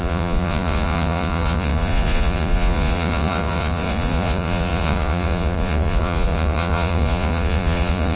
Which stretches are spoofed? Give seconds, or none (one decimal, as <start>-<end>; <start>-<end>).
0.0-8.2

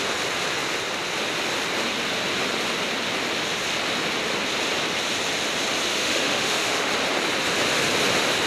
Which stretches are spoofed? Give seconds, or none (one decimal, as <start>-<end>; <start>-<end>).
5.9-6.9

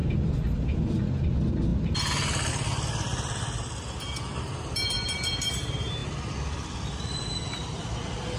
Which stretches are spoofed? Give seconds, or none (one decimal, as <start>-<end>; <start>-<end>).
3.1-5.5

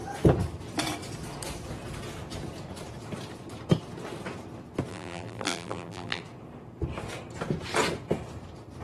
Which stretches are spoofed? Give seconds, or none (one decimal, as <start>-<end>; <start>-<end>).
4.9-6.2

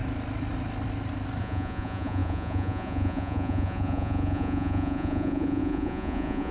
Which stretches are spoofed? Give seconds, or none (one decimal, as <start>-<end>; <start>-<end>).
1.4-6.5

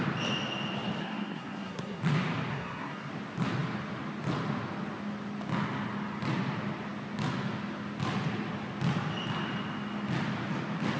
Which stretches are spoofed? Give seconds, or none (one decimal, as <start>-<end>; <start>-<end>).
1.0-2.0; 2.5-3.1

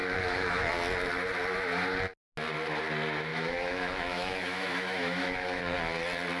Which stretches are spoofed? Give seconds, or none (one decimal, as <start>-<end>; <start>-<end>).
0.0-0.7; 3.3-5.6